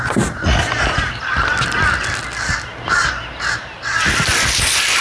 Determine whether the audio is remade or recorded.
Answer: recorded